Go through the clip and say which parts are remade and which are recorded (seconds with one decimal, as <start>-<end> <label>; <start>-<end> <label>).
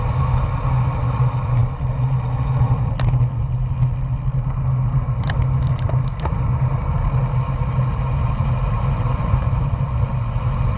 0.0-7.2 recorded; 7.2-9.7 remade; 9.7-10.8 recorded